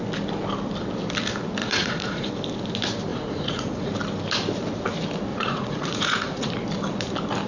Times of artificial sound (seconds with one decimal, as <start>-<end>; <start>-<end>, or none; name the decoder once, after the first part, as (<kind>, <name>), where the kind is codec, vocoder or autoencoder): 1.6-2.3 (vocoder, Vocos); 3.1-3.9; 5.3-6.5